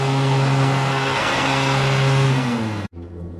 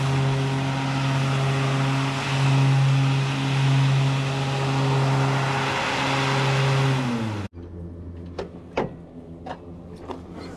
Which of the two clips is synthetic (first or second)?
first